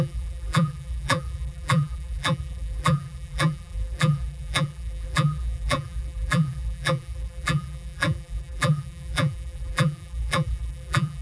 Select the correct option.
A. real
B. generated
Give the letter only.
B